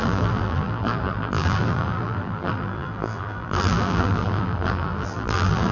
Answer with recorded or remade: remade